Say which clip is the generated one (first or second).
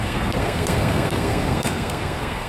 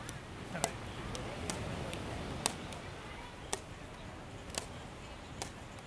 first